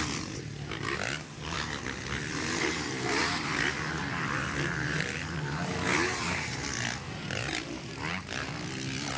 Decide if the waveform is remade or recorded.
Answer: recorded